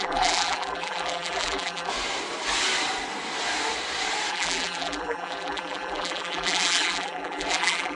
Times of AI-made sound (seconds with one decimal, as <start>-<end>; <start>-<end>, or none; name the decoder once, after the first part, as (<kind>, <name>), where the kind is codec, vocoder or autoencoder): 0.0-1.9 (vocoder, BigVGAN v2); 4.3-7.9